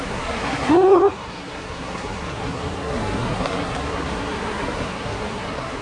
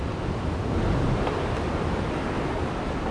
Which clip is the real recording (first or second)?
second